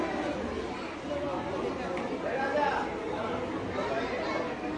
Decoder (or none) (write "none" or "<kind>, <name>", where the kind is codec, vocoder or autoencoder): none